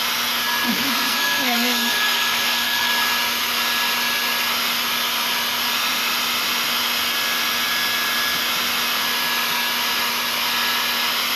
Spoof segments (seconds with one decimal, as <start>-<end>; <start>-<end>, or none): 0.7-2.9